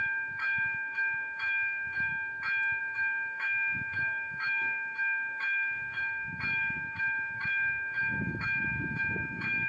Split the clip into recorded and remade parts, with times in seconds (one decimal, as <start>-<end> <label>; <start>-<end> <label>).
0.0-2.1 remade; 2.1-2.8 recorded; 2.8-9.7 remade